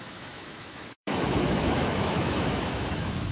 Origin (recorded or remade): remade